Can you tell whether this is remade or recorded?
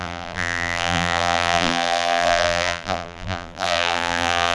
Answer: remade